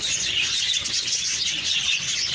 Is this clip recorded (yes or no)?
no